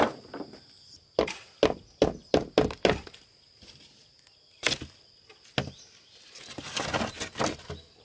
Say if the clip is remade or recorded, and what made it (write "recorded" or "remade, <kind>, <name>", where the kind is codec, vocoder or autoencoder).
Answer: recorded